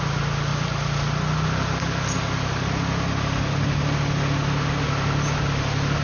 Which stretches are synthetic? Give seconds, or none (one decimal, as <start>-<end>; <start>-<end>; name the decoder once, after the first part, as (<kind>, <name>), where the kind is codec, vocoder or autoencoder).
none